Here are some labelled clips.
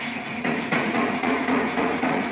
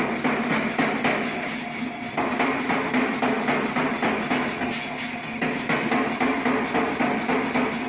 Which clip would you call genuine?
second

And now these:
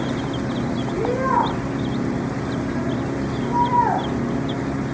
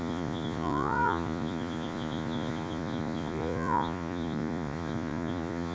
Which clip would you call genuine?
first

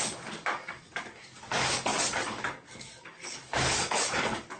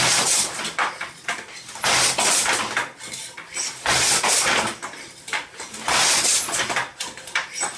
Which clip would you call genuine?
second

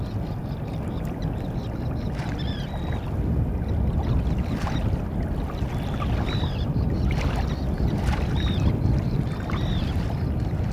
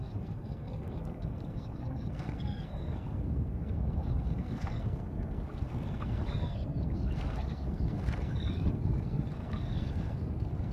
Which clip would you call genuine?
first